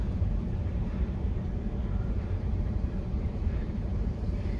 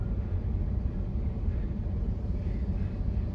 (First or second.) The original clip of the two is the second